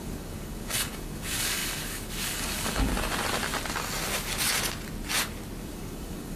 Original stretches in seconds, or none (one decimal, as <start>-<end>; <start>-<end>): 2.9-5.6

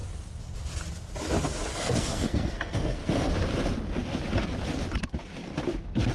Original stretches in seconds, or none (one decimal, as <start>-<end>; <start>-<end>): 0.0-1.7; 3.3-6.1

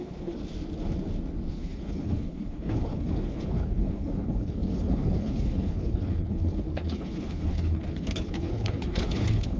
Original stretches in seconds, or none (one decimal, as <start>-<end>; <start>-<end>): 0.4-1.5

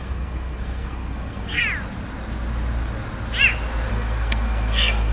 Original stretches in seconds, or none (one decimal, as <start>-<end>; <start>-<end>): 1.6-3.9

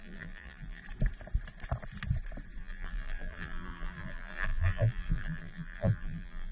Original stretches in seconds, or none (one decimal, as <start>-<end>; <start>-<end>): 0.8-2.6

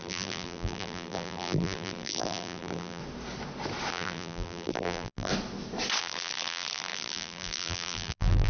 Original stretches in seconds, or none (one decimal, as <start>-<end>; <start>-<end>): 3.0-3.9; 5.3-6.0

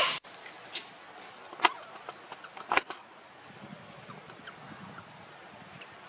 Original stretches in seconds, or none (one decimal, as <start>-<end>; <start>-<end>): 0.0-6.1

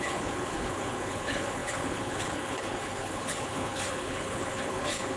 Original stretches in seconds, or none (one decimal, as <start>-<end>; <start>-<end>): none